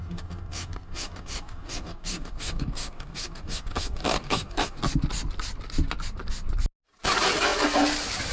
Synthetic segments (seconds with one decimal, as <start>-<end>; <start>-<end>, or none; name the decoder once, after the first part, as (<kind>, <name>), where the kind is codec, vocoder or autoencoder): 0.0-4.8 (codec, DAC)